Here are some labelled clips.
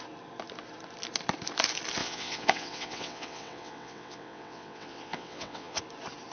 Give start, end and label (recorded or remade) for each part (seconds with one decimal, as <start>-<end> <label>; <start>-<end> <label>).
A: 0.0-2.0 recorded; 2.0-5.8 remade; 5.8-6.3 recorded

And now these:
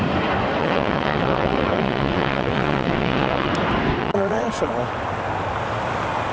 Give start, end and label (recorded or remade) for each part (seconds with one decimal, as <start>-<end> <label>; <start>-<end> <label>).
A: 0.0-0.6 recorded; 0.6-3.5 remade; 3.5-4.0 recorded; 4.0-4.7 remade; 4.7-6.3 recorded

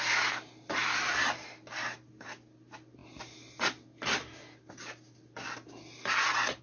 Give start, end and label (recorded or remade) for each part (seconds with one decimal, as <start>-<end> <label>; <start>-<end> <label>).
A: 0.0-6.6 recorded

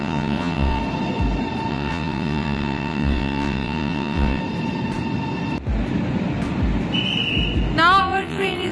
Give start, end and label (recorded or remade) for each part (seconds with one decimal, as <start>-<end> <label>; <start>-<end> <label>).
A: 0.0-0.8 remade; 0.8-1.7 recorded; 1.7-4.4 remade; 4.4-8.0 recorded; 8.0-8.7 remade

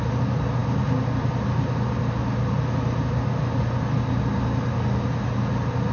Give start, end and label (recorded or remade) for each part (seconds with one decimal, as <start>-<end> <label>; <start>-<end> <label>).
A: 0.0-5.9 recorded

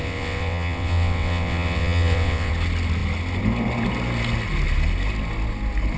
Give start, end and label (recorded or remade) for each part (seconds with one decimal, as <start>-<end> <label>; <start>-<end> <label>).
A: 0.0-2.5 remade; 2.5-6.0 recorded

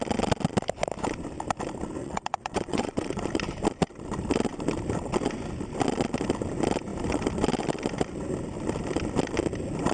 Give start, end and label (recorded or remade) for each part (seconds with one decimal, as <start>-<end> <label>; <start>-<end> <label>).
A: 0.0-2.0 recorded; 2.0-3.2 remade; 3.2-9.9 recorded

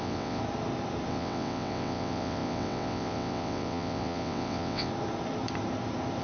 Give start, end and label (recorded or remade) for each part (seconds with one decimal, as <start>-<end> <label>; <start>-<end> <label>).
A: 0.0-0.4 remade; 0.4-1.1 recorded; 1.1-4.9 remade; 4.9-6.2 recorded